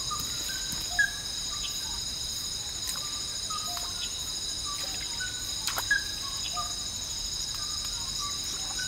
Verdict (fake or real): real